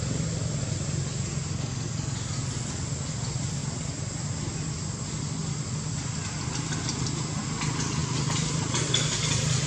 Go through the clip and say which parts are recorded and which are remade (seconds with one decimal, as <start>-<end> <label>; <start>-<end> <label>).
0.0-8.0 recorded; 8.0-9.1 remade; 9.1-9.7 recorded